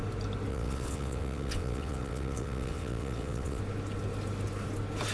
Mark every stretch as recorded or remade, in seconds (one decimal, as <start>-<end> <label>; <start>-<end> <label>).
0.0-0.5 recorded; 0.5-3.6 remade; 3.6-5.1 recorded